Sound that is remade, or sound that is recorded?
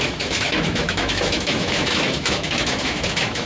remade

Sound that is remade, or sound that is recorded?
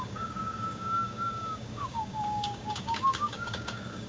remade